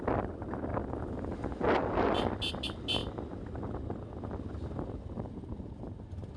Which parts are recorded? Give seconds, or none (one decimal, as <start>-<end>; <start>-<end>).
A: 0.0-6.4